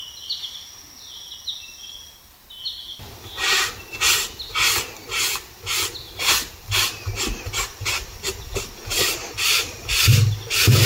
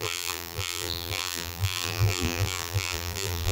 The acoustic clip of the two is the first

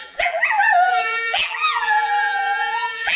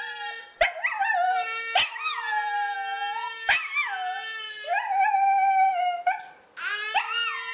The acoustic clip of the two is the second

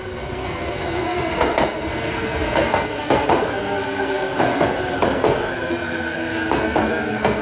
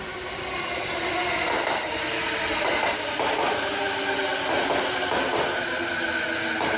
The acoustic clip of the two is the second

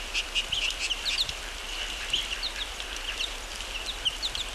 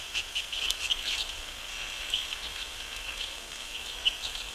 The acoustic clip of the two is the first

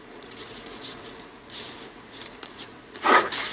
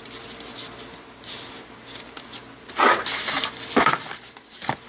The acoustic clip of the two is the second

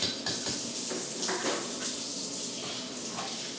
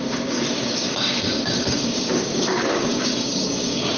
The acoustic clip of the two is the first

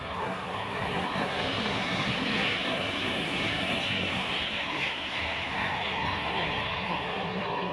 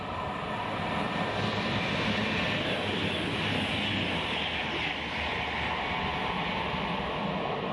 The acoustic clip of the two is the second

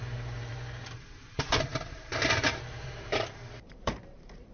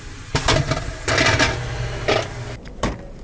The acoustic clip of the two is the second